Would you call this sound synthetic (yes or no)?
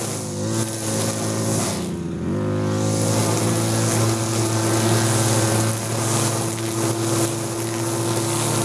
no